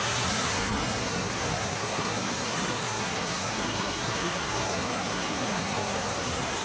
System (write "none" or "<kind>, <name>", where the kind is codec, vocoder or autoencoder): codec, SNAC